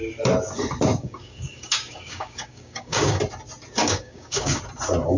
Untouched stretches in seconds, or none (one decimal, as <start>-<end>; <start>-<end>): 0.0-0.9; 3.2-3.8; 4.6-5.2